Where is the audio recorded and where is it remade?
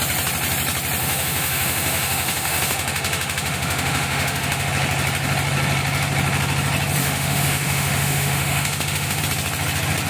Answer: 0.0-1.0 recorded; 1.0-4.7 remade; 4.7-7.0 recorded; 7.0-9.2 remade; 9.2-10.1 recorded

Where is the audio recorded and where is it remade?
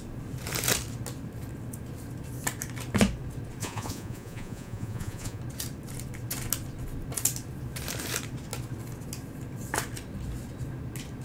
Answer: 0.0-3.6 recorded; 3.6-5.4 remade; 5.4-11.2 recorded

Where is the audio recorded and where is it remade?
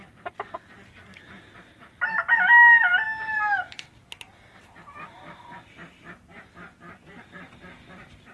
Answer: 0.0-8.3 recorded